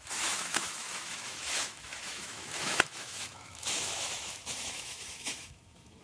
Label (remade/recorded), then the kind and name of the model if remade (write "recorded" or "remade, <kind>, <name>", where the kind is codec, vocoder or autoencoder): remade, autoencoder, DAC-VAE